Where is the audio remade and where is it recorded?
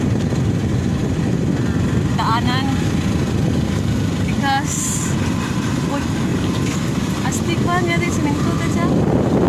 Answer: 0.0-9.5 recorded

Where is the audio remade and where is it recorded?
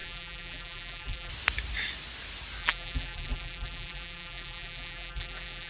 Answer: 0.0-1.3 remade; 1.3-2.6 recorded; 2.6-5.7 remade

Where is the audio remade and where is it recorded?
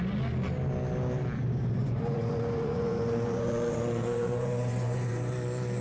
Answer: 0.0-1.8 recorded; 1.8-5.3 remade; 5.3-5.8 recorded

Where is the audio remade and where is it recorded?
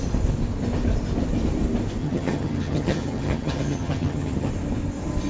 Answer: 0.0-2.0 recorded; 2.0-4.5 remade; 4.5-5.3 recorded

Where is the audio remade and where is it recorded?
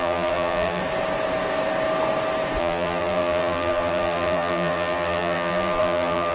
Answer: 0.0-0.8 remade; 0.8-2.6 recorded; 2.6-6.3 remade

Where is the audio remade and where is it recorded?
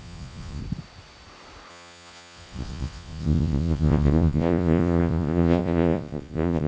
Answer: 0.0-0.6 remade; 0.6-1.7 recorded; 1.7-6.7 remade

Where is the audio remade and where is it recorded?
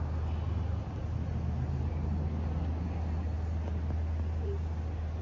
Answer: 0.0-5.2 recorded